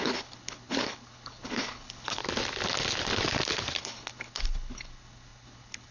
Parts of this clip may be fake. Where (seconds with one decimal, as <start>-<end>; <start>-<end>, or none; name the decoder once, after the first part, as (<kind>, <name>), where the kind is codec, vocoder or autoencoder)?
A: 0.0-2.2 (codec, HILCodec); 3.8-5.9